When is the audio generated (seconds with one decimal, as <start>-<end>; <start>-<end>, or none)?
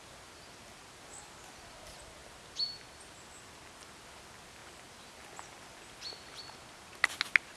none